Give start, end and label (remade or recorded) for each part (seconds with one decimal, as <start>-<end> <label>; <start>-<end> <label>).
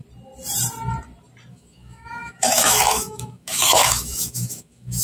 0.0-1.5 recorded; 1.5-5.0 remade